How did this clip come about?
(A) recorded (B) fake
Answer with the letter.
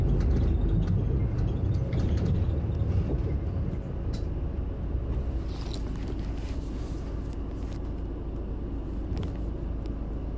A